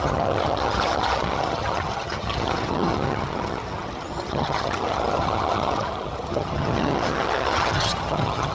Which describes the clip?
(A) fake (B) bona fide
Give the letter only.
A